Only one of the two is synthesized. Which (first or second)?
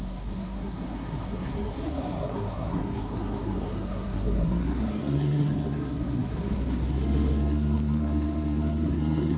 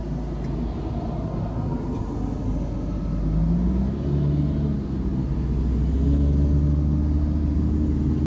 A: first